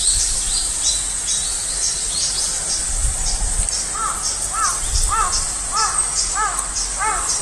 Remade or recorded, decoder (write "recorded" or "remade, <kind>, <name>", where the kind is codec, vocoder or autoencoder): recorded